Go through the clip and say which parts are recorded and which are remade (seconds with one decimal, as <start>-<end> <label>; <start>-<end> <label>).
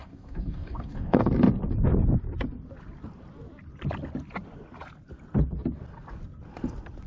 0.0-1.3 remade; 1.3-7.1 recorded